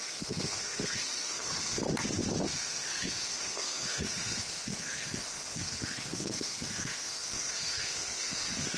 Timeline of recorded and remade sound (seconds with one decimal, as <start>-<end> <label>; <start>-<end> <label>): 0.0-1.9 remade; 1.9-2.4 recorded; 2.4-8.8 remade